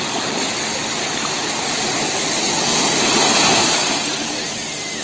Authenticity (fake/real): fake